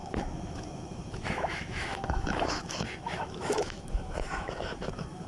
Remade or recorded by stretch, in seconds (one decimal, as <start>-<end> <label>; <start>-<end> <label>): 0.0-5.3 remade